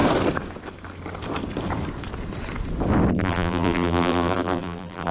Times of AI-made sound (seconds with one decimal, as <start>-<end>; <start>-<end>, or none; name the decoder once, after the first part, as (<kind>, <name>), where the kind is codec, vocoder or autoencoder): 3.1-5.1 (vocoder, BigVGAN v2)